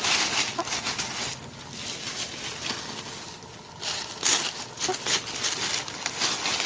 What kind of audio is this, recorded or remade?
recorded